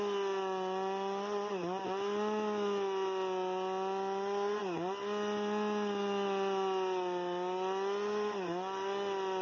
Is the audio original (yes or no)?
yes